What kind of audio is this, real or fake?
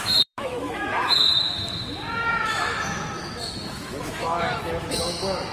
fake